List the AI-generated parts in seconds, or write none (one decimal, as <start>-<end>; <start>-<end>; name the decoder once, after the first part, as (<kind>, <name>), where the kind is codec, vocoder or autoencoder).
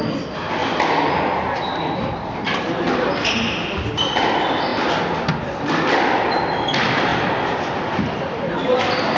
none